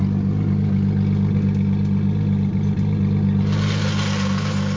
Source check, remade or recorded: recorded